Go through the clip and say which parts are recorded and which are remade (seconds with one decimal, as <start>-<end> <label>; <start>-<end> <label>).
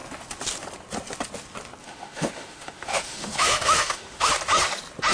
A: 0.0-1.8 recorded; 1.8-4.3 remade; 4.3-5.1 recorded